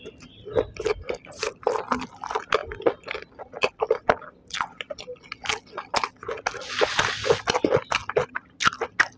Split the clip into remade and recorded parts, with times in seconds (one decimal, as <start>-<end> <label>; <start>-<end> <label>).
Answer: 0.0-9.2 recorded